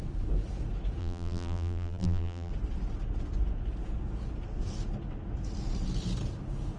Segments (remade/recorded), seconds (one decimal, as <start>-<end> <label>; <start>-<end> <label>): 0.0-1.0 recorded; 1.0-2.5 remade; 2.5-6.8 recorded